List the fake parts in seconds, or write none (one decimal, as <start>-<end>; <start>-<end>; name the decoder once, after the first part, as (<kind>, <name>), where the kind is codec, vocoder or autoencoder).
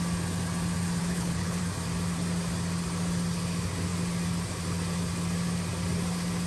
1.0-1.6 (codec, HILCodec)